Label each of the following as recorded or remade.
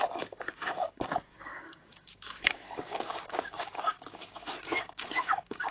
remade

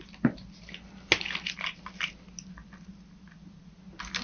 recorded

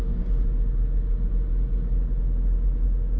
recorded